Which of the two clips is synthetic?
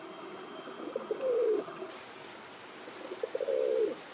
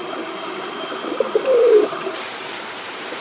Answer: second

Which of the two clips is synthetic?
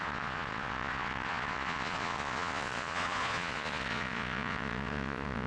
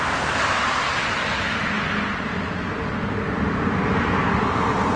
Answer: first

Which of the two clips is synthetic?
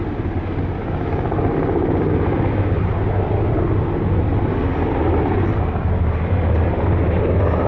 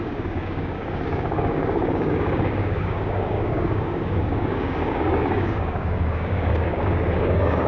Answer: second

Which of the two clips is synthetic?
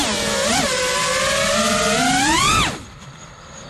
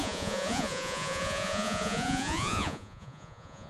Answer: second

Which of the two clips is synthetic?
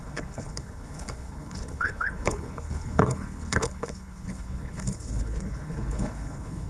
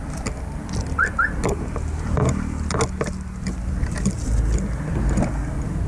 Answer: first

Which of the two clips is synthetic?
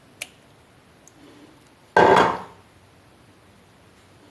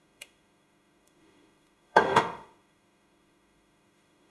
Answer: second